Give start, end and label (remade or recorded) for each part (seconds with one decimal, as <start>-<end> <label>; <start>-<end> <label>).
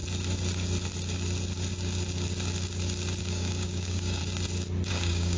0.0-3.2 recorded; 3.2-4.2 remade; 4.2-4.9 recorded; 4.9-5.4 remade